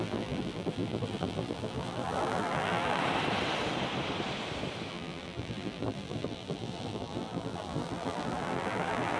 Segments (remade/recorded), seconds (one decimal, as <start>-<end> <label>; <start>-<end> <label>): 0.0-3.0 remade; 3.0-4.9 recorded; 4.9-9.2 remade